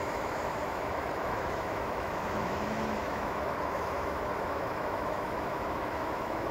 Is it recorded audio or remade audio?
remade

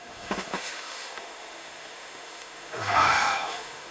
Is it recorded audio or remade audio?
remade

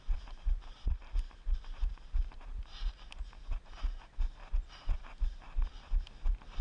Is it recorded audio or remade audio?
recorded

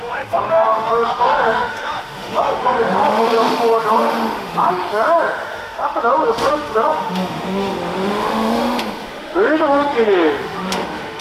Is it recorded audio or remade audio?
remade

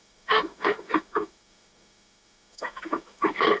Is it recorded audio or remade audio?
remade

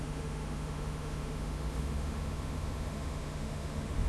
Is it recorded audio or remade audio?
remade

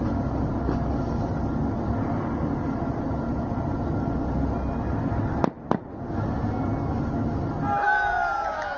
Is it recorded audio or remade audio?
recorded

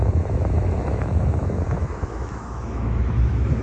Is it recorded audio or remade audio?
remade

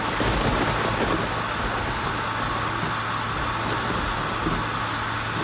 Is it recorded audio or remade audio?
recorded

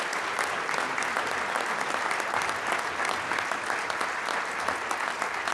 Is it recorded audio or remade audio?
recorded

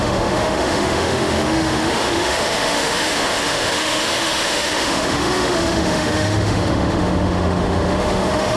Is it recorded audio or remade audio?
remade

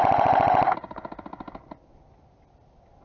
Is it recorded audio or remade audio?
recorded